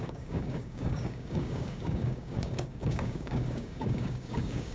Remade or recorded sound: remade